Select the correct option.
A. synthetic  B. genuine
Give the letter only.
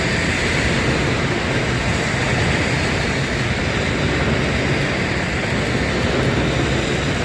B